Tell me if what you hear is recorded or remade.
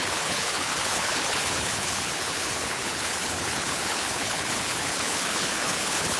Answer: remade